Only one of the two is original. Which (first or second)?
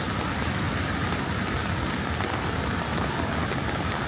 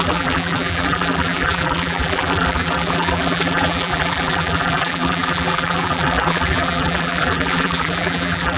first